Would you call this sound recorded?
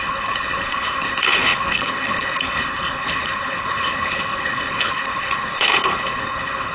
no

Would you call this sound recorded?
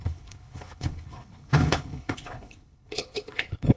no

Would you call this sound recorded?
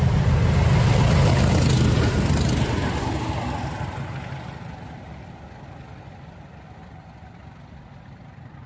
yes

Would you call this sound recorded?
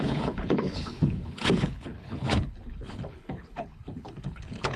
no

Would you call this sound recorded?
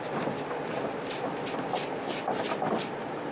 yes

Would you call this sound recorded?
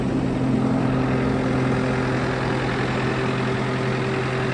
yes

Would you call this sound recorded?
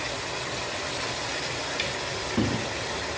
yes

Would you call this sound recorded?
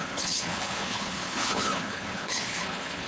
no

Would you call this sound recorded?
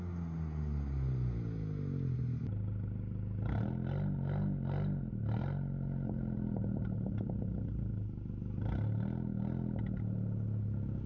yes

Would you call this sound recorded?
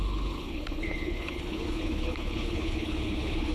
no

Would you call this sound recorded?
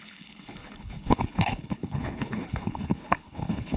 no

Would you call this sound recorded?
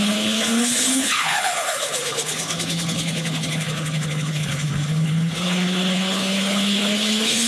no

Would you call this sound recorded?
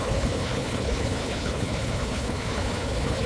no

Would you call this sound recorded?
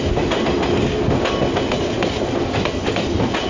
yes